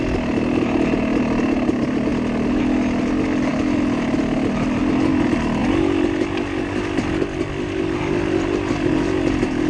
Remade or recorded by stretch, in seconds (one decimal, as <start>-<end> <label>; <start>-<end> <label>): 0.0-9.7 recorded